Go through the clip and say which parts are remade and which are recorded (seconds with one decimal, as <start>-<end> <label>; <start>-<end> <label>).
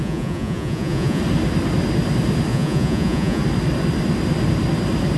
0.0-1.2 remade; 1.2-2.5 recorded; 2.5-3.4 remade; 3.4-5.2 recorded